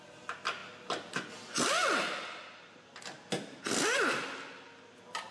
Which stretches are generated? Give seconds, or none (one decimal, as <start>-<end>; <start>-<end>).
none